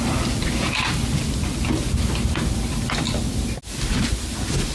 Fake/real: real